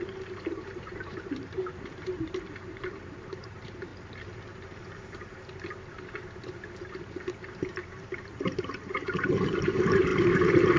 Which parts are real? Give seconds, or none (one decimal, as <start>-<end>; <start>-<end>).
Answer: 3.9-6.9